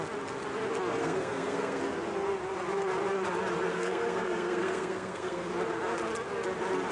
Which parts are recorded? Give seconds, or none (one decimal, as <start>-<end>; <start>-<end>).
0.0-1.0; 1.8-3.7; 5.5-6.9